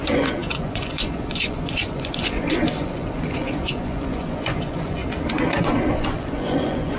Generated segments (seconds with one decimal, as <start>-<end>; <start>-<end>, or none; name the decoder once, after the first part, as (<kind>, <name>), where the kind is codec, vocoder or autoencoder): 0.0-5.0 (vocoder, Vocos); 5.9-7.0